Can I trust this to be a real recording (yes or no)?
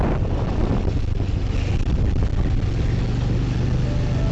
yes